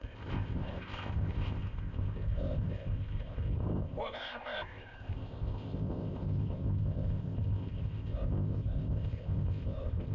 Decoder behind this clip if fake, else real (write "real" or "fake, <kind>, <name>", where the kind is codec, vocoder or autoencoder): fake, codec, ZipCodec